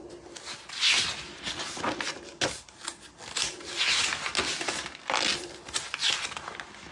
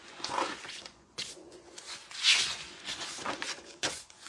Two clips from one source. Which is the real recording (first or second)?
first